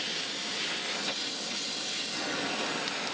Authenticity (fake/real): real